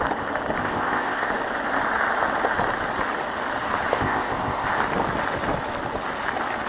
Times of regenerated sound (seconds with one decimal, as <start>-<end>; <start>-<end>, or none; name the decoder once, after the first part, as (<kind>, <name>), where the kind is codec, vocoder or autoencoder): 0.6-1.3 (codec, ZipCodec); 3.9-4.7